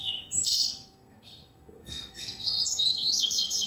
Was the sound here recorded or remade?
remade